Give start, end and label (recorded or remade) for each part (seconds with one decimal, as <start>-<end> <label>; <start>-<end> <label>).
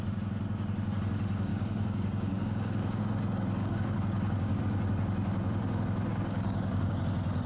0.0-1.5 recorded; 1.5-3.0 remade; 3.0-3.6 recorded; 3.6-4.6 remade; 4.6-6.1 recorded; 6.1-7.0 remade; 7.0-7.5 recorded